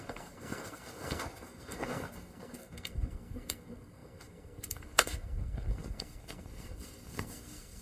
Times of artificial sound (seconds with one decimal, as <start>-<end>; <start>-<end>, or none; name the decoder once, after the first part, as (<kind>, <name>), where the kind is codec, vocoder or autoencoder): 0.0-7.8 (codec, SNAC)